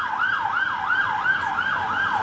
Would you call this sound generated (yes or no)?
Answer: no